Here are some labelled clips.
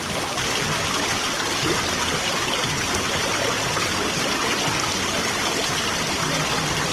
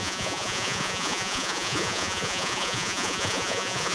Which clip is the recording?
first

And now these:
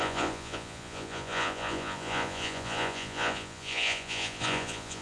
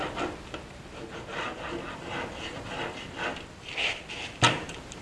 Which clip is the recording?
second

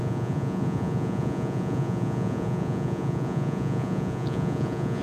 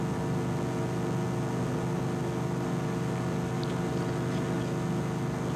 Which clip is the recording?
second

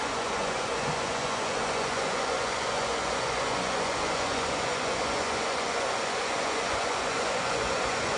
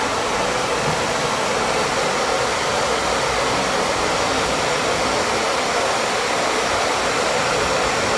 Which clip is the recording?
second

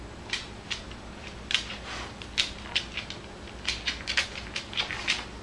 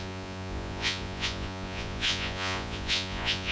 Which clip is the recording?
first